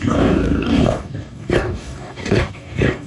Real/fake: fake